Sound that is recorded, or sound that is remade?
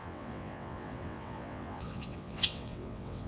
remade